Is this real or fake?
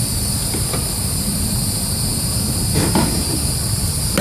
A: real